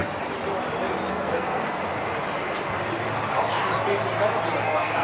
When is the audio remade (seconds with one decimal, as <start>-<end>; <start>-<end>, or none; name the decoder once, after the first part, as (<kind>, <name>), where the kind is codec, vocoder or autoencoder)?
1.1-1.6 (codec, SNAC); 4.6-5.0